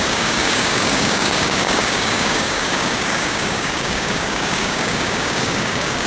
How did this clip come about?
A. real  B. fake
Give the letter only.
B